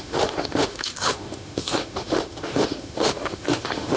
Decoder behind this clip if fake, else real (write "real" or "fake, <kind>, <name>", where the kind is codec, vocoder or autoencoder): fake, autoencoder, DAC-VAE